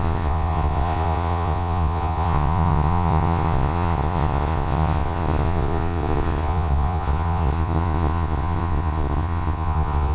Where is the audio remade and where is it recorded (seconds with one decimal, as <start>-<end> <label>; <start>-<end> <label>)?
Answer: 0.0-10.1 remade